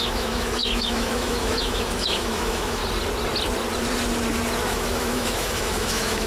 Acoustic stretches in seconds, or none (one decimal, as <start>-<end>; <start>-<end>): 2.8-4.7